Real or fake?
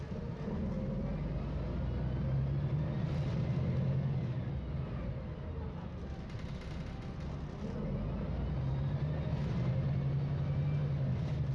real